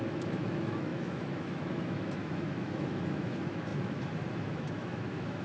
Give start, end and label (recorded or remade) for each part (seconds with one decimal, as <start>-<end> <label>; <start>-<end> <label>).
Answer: 0.0-5.4 remade